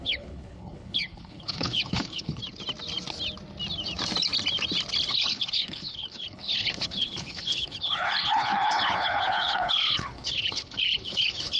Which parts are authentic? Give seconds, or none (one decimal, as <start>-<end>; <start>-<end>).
2.4-5.1